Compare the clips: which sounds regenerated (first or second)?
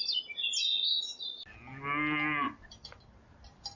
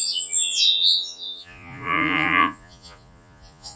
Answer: second